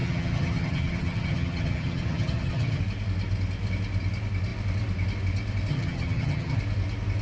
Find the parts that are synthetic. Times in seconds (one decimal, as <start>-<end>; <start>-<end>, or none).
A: 0.0-2.8; 5.7-6.6